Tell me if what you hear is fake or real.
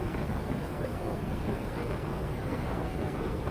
fake